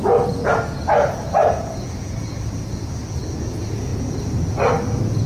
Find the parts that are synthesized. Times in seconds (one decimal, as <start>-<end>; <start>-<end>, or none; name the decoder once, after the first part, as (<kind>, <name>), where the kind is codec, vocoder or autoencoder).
none